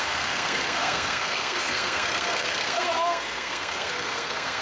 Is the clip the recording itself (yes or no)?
no